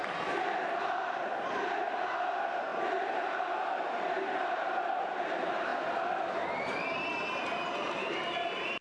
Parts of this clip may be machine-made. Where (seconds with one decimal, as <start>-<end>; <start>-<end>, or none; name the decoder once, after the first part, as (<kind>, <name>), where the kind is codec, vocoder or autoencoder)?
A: 0.8-8.8 (vocoder, BigVGAN v2)